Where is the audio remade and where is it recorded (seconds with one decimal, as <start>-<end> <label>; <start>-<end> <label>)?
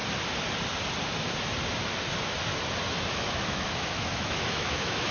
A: 0.0-3.1 recorded; 3.1-5.1 remade